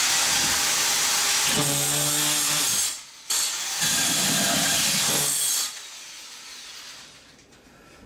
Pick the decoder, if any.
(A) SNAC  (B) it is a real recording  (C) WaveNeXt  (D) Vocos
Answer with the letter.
B